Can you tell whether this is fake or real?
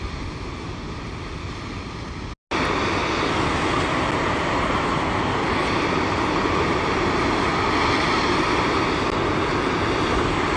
real